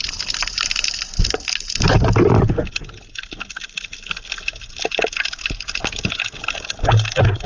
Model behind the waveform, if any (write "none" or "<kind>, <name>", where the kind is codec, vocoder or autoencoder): none